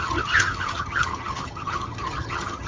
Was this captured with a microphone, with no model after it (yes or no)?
no